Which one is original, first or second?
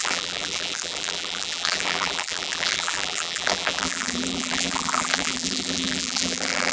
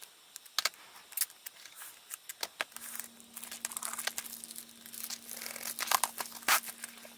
second